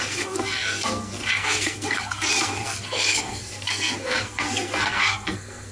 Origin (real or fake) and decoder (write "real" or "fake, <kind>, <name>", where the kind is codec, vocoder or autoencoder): fake, codec, SNAC